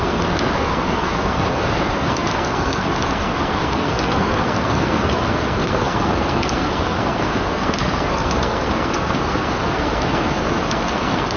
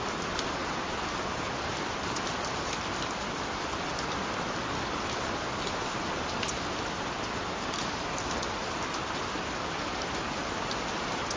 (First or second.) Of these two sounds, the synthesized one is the first